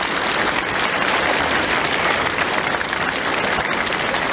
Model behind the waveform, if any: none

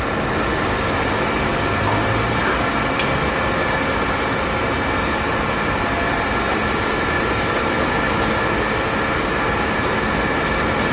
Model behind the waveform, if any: none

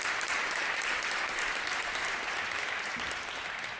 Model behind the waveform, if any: vocoder, BigVGAN v2